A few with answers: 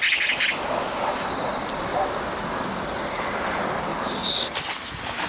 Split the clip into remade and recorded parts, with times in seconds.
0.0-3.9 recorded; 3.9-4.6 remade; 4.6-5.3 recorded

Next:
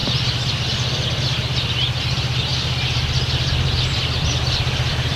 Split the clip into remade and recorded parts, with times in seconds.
0.0-2.0 recorded; 2.0-2.5 remade; 2.5-3.3 recorded; 3.3-5.2 remade

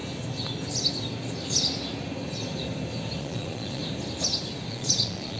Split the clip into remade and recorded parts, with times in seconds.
0.0-3.2 recorded; 3.2-3.8 remade; 3.8-4.7 recorded; 4.7-5.4 remade